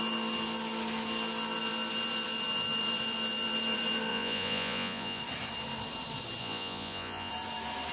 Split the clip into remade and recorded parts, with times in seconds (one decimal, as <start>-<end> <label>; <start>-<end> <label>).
0.0-4.1 recorded; 4.1-5.2 remade; 5.2-6.4 recorded; 6.4-7.3 remade; 7.3-7.9 recorded